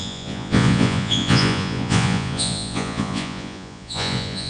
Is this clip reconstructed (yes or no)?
yes